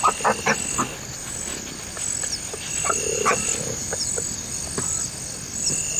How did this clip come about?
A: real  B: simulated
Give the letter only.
A